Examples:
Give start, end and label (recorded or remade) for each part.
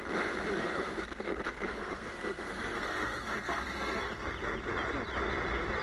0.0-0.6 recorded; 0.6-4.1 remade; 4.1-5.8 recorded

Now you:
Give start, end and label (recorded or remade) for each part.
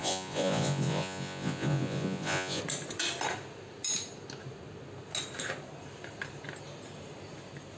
0.0-2.6 remade; 2.6-7.8 recorded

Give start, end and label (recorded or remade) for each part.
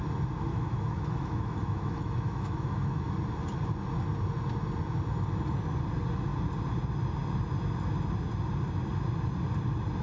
0.0-0.5 recorded; 0.5-3.1 remade; 3.1-10.0 recorded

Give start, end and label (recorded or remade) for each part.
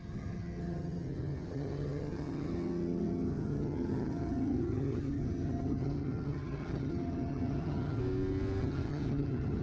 0.0-8.0 remade; 8.0-8.6 recorded; 8.6-9.6 remade